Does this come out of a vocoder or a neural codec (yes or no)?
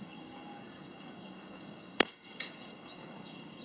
yes